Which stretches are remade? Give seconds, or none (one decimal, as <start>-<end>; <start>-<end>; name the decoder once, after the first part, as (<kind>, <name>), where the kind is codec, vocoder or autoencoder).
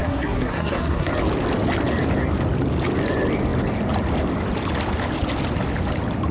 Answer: 0.0-1.1 (codec, SNAC)